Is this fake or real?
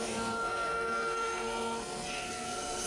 fake